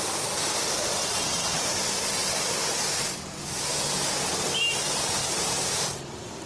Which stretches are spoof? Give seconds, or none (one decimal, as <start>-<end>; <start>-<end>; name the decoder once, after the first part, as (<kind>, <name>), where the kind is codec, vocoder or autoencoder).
1.0-1.6 (vocoder, WaveNeXt)

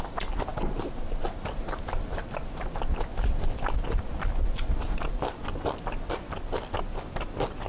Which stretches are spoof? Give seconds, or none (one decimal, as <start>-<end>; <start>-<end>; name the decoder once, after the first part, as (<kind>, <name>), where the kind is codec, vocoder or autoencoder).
none

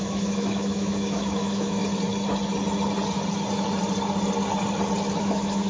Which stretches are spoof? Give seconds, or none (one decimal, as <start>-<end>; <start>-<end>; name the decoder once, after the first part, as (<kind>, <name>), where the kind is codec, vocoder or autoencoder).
0.0-1.8 (autoencoder, DAC-VAE); 5.2-5.7

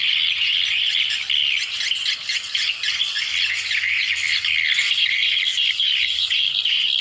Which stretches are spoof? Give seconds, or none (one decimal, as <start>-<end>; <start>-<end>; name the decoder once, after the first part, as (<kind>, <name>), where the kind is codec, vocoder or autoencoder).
5.5-6.4 (vocoder, BigVGAN v2)

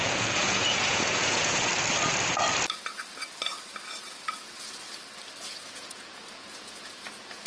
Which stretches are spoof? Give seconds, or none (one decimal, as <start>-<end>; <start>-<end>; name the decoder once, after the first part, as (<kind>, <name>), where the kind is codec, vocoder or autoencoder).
0.0-1.7 (vocoder, Vocos); 5.4-7.5

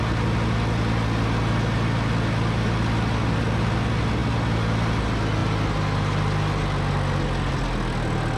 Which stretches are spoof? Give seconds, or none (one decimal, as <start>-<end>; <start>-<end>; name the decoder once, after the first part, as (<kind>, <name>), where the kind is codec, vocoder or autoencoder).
none

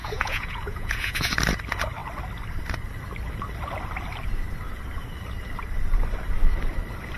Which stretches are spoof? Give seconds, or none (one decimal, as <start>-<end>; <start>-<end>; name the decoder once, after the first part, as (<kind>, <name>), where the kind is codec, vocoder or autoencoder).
0.0-1.3 (vocoder, Vocos)